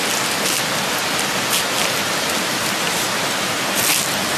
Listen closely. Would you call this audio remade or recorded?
recorded